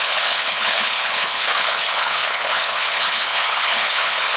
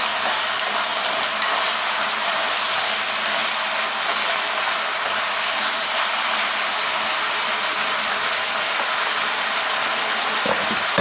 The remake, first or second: first